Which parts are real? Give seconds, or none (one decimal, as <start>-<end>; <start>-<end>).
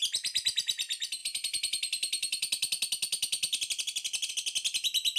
0.0-5.2